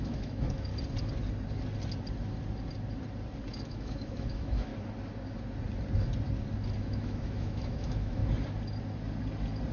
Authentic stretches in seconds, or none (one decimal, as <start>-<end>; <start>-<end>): 0.7-3.5; 4.7-6.8; 8.2-9.7